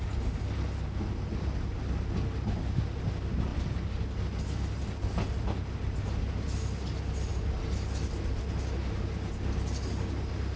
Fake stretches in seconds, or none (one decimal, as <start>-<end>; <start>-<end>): none